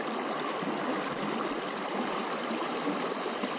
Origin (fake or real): real